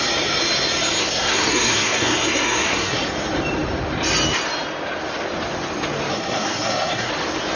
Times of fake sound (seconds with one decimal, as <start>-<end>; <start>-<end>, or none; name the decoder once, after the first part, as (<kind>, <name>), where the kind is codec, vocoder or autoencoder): 1.0-3.0 (codec, SNAC); 6.1-7.1